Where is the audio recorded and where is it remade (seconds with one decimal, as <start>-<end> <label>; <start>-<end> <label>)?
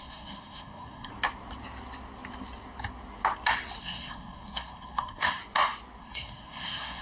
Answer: 0.0-1.1 remade; 1.1-3.8 recorded; 3.8-5.4 remade; 5.4-6.0 recorded; 6.0-7.0 remade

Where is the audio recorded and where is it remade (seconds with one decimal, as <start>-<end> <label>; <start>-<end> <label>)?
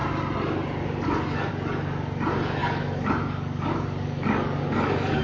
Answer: 0.0-2.6 recorded; 2.6-5.2 remade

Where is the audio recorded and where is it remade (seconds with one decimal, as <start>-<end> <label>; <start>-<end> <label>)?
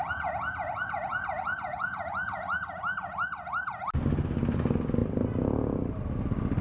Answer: 0.0-6.6 recorded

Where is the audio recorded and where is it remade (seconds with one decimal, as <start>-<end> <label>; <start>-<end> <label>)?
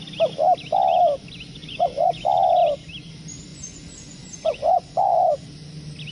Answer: 0.0-1.6 recorded; 1.6-2.2 remade; 2.2-3.5 recorded; 3.5-5.3 remade; 5.3-6.1 recorded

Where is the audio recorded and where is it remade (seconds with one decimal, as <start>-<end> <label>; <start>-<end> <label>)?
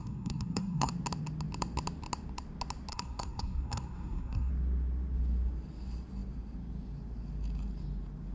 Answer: 0.0-0.9 remade; 0.9-2.9 recorded; 2.9-4.5 remade; 4.5-8.3 recorded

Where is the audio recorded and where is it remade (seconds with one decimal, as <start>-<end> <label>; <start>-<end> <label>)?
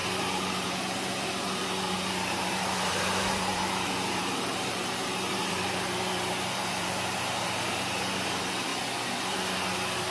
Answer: 0.0-8.7 remade; 8.7-10.1 recorded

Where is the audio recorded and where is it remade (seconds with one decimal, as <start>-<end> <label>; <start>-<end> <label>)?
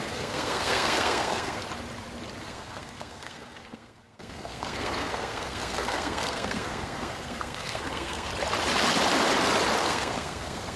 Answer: 0.0-1.6 remade; 1.6-2.4 recorded; 2.4-8.3 remade; 8.3-9.8 recorded; 9.8-10.8 remade